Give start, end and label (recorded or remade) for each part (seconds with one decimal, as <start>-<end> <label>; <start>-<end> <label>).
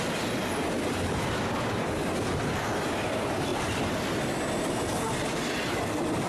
0.0-6.3 recorded